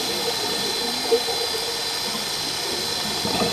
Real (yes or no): yes